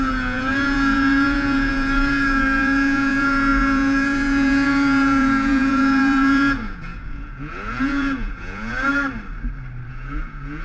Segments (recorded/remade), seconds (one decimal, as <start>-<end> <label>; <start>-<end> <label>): 0.0-8.9 remade; 8.9-9.9 recorded; 9.9-10.6 remade